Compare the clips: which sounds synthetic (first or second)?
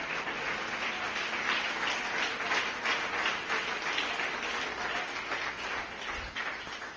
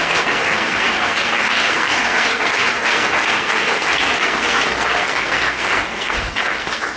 second